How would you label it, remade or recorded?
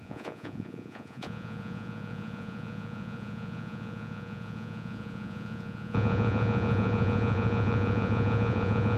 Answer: remade